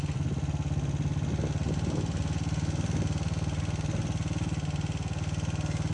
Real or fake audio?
real